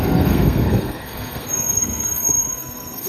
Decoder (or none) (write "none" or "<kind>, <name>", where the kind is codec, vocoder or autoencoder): codec, SNAC